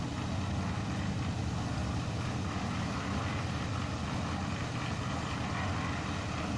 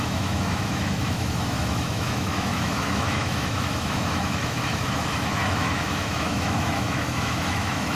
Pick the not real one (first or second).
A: second